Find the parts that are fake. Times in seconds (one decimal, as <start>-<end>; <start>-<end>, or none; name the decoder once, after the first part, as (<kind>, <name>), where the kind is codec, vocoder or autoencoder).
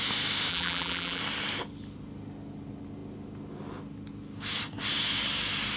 0.5-1.2 (vocoder, BigVGAN v2)